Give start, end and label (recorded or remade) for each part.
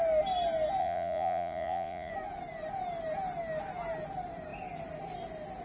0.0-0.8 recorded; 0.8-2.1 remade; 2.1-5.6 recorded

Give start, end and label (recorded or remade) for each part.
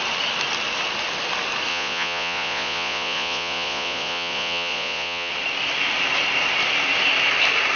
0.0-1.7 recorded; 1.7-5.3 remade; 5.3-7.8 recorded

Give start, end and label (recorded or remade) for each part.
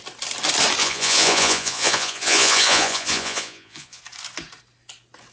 0.0-0.8 recorded; 0.8-4.0 remade; 4.0-5.3 recorded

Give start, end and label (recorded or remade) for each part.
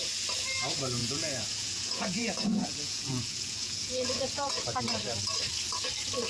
0.0-1.0 recorded; 1.0-4.8 remade; 4.8-6.3 recorded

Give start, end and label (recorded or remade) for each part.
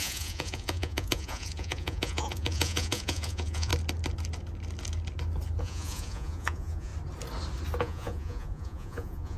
0.0-3.7 remade; 3.7-5.6 recorded; 5.6-6.9 remade; 6.9-7.8 recorded; 7.8-9.4 remade